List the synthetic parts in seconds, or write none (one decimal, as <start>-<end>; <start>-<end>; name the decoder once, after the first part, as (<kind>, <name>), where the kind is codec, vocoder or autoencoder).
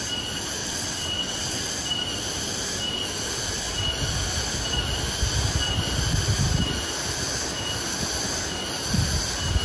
0.6-1.7 (vocoder, WaveNeXt)